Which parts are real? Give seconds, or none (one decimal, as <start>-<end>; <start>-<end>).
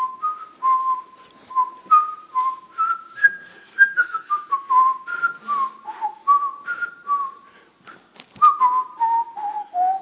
0.0-3.2; 4.3-10.0